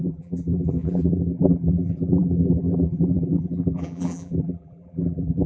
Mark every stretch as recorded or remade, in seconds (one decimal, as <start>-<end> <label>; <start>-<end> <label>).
0.0-5.5 remade